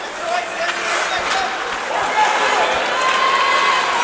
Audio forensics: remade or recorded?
recorded